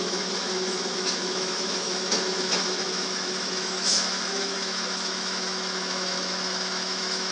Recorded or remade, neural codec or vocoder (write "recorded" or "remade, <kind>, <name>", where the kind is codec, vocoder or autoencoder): remade, autoencoder, DAC-VAE